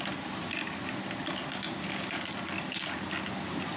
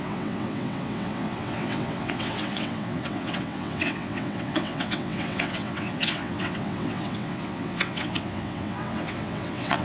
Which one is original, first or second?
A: first